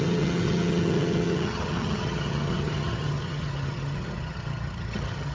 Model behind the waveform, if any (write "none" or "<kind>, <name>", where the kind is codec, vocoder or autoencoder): vocoder, HiFi-GAN